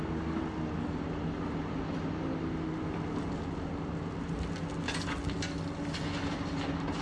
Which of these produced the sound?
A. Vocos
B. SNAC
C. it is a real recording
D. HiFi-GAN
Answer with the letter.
C